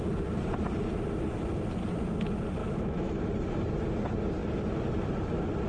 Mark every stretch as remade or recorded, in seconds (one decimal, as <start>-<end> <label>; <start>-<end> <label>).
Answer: 0.0-2.6 recorded; 2.6-3.1 remade; 3.1-5.7 recorded